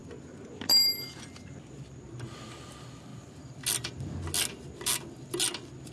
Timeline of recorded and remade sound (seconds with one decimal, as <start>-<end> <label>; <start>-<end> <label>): 0.0-5.9 recorded

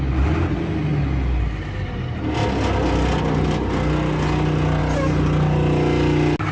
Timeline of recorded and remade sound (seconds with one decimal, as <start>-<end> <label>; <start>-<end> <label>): 0.0-6.5 recorded

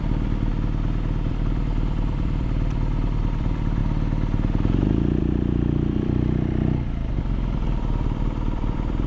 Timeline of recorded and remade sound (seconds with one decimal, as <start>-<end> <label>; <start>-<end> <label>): 0.0-0.5 remade; 0.5-1.3 recorded; 1.3-3.8 remade; 3.8-5.2 recorded; 5.2-9.1 remade

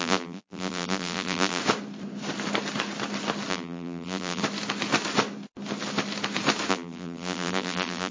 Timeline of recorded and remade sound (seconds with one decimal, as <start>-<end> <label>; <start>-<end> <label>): 0.0-1.6 remade; 1.6-3.5 recorded; 3.5-4.4 remade; 4.4-6.7 recorded; 6.7-8.1 remade